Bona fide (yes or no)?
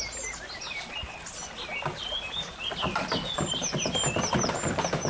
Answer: yes